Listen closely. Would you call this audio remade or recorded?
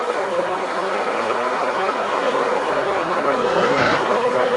remade